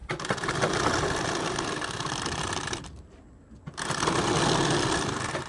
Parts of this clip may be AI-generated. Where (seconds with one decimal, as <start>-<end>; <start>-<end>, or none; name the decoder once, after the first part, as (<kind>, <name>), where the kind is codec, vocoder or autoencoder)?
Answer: none